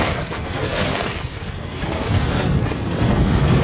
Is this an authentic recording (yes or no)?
no